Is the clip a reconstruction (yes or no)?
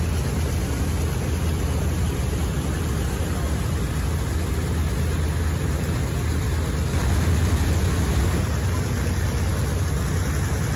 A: no